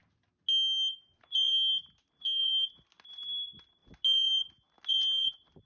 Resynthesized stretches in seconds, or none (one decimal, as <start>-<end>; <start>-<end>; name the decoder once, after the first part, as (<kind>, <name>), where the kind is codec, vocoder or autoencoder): none